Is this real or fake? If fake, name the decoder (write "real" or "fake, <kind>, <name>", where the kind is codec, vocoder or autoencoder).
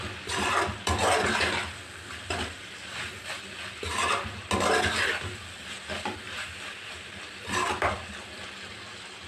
real